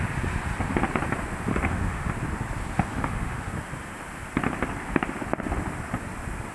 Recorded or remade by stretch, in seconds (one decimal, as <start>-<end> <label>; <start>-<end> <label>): 0.0-1.5 recorded; 1.5-2.1 remade; 2.1-2.9 recorded; 2.9-3.5 remade; 3.5-6.5 recorded